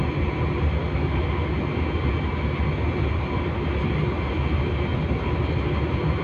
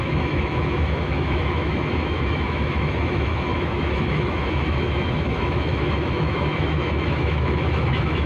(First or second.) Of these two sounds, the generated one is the second